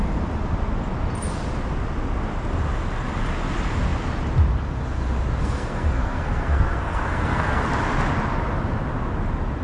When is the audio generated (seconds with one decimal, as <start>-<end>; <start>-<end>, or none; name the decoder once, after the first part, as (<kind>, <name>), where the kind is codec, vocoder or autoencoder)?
5.4-7.7 (codec, SNAC)